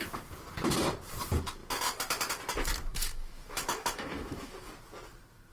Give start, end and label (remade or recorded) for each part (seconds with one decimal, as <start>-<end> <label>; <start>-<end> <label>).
0.0-2.9 recorded; 2.9-4.7 remade; 4.7-5.5 recorded